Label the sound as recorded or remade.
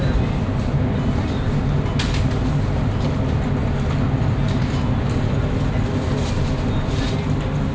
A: recorded